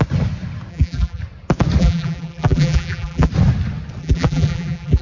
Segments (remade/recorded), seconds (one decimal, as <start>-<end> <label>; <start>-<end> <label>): 0.0-0.7 recorded; 0.7-1.2 remade; 1.2-1.8 recorded; 1.8-3.3 remade; 3.3-4.0 recorded; 4.0-5.0 remade